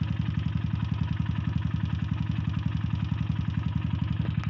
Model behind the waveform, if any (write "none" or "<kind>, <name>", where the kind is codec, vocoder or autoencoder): none